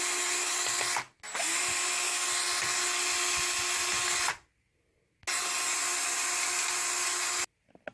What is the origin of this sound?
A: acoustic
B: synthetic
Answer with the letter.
A